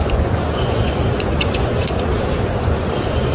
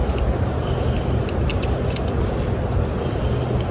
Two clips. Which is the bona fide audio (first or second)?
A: second